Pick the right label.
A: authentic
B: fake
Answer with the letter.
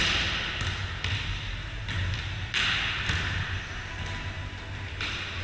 A